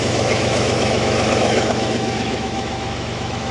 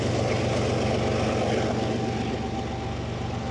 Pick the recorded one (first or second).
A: second